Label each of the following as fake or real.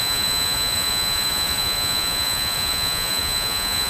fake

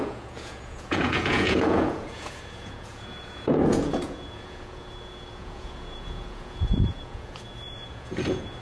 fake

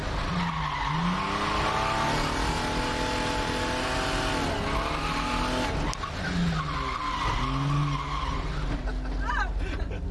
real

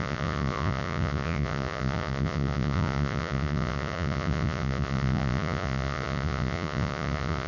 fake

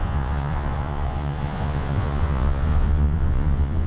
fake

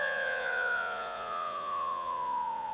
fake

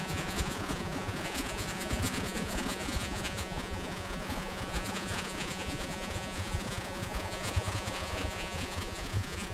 fake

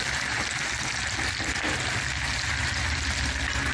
real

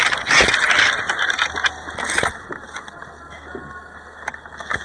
real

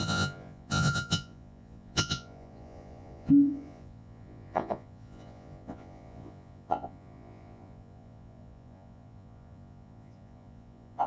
fake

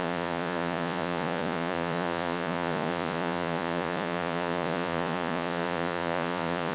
fake